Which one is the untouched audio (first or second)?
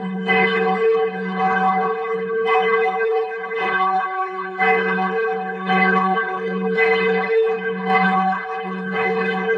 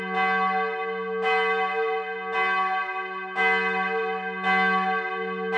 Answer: second